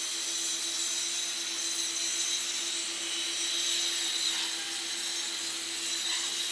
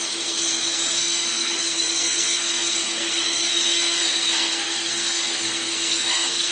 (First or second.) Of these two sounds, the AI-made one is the second